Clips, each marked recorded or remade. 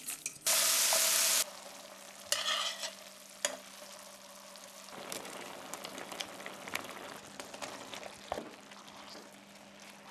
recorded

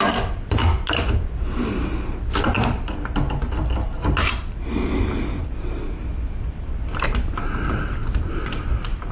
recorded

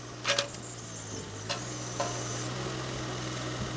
recorded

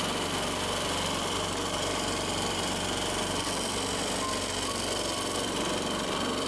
remade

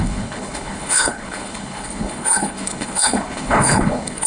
remade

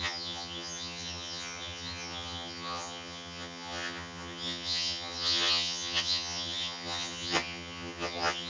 remade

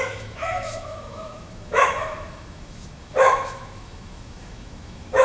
remade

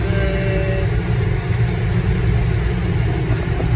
recorded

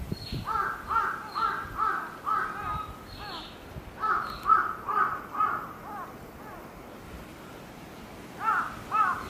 recorded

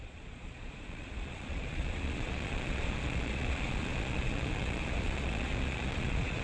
remade